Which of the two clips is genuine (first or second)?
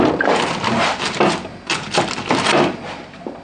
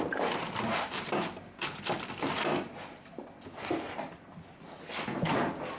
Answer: second